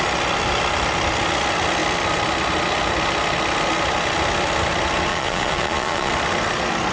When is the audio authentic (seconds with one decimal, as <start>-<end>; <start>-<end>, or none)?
0.0-5.1; 6.1-6.9